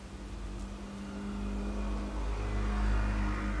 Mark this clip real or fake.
real